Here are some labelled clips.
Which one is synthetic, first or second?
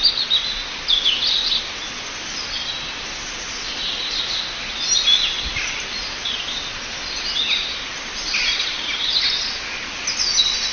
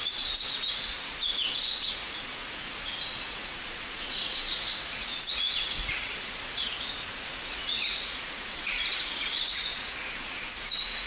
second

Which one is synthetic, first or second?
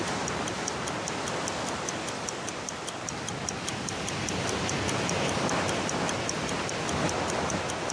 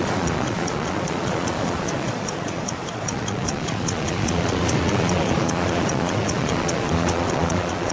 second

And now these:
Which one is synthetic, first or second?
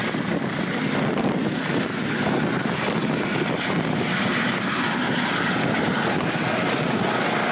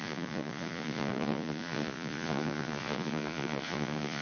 second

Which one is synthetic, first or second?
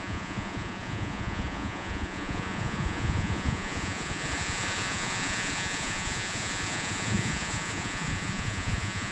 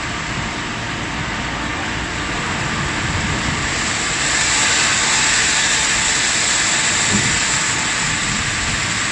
first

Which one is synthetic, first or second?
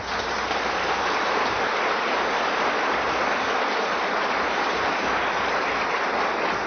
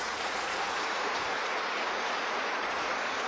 second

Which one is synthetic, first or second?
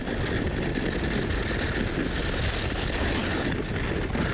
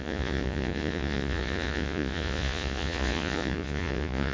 second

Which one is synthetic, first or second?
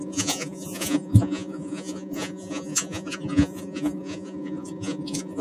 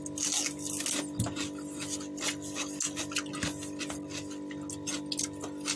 first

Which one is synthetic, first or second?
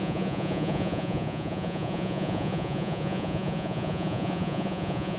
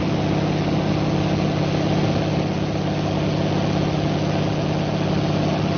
first